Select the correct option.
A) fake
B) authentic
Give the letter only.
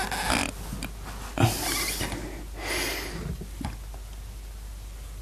B